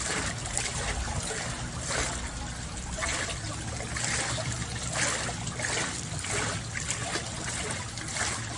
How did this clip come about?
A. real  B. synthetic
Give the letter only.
A